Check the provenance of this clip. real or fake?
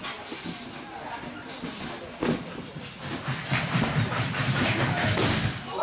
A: real